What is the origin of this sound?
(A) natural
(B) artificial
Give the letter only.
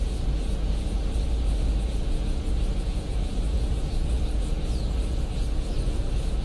B